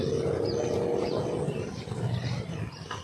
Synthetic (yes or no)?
no